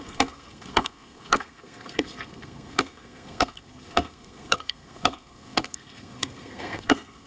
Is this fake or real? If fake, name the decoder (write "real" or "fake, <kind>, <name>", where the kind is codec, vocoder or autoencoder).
fake, codec, SNAC